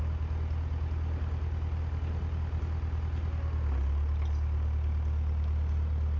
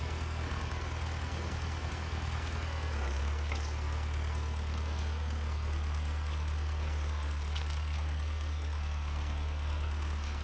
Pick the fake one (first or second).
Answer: second